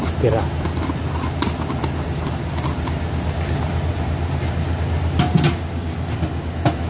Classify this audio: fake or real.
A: real